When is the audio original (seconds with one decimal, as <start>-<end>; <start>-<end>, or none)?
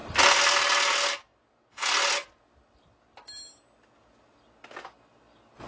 0.0-5.7